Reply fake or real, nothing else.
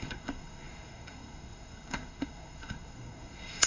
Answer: fake